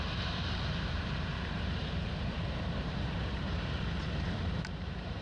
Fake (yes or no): yes